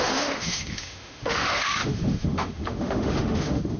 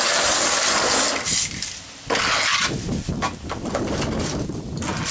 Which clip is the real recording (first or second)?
second